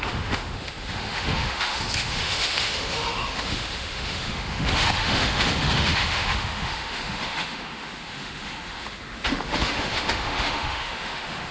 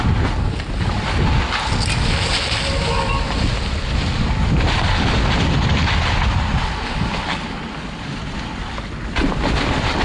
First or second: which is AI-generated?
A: first